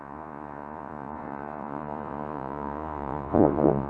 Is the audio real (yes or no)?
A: no